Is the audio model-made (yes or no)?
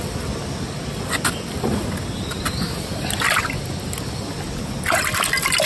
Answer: no